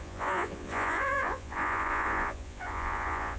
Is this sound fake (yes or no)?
yes